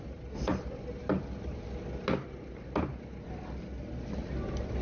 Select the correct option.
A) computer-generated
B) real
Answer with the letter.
B